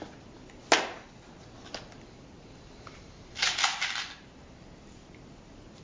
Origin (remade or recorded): recorded